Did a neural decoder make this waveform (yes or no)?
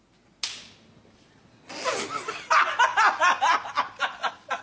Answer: no